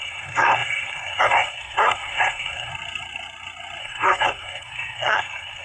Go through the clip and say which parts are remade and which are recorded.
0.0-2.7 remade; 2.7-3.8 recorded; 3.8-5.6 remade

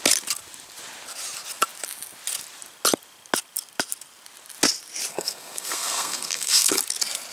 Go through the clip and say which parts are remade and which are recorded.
0.0-5.1 recorded; 5.1-6.8 remade; 6.8-7.3 recorded

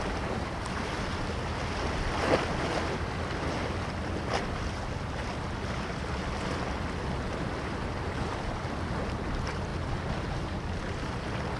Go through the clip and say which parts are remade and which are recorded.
0.0-11.6 recorded

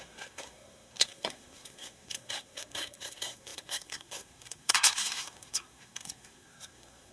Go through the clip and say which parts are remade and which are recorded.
0.0-7.1 remade

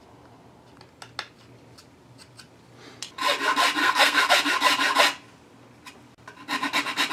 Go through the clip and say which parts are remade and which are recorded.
0.0-3.8 recorded; 3.8-4.3 remade; 4.3-7.1 recorded

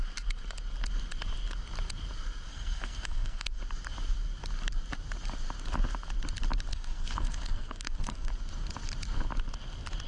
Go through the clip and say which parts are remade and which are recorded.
0.0-2.5 recorded; 2.5-3.6 remade; 3.6-6.7 recorded; 6.7-8.3 remade; 8.3-10.1 recorded

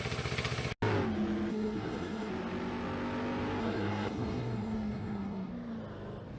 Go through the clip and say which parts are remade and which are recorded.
0.0-1.5 recorded; 1.5-2.3 remade; 2.3-3.6 recorded; 3.6-5.5 remade; 5.5-6.4 recorded

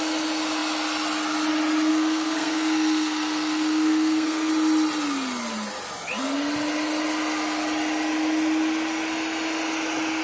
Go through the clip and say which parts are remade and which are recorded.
0.0-1.9 recorded; 1.9-4.5 remade; 4.5-10.2 recorded